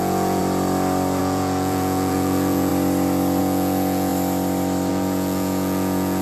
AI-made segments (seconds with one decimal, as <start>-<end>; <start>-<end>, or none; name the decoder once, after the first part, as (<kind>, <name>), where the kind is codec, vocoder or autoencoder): 0.0-0.4 (vocoder, Vocos); 1.2-2.7; 3.4-4.1; 4.9-6.2